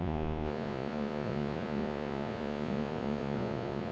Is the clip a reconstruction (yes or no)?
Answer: yes